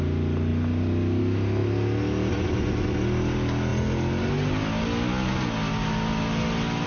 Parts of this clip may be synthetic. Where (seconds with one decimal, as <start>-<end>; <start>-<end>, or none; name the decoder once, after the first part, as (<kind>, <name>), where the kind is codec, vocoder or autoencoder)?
none